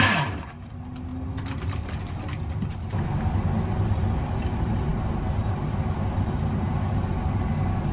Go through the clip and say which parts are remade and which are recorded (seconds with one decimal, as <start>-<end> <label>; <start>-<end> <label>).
0.0-7.9 recorded